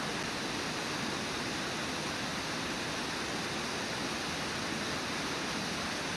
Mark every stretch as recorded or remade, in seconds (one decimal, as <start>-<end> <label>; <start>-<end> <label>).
0.0-6.2 recorded